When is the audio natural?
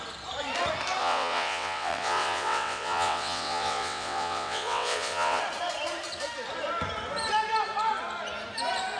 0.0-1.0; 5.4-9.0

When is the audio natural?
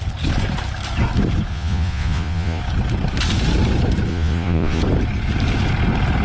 0.0-1.5; 2.6-4.1; 4.8-6.2